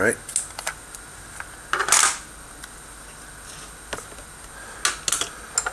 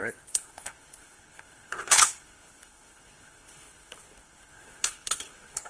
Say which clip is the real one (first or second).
first